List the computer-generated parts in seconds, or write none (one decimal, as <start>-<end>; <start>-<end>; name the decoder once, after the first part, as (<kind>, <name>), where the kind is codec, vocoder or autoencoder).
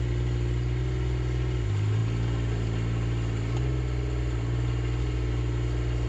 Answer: none